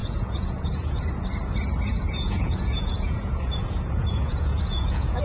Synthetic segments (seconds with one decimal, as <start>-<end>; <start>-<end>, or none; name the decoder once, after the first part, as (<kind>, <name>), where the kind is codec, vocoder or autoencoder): 0.0-1.0 (vocoder, Vocos); 1.9-5.2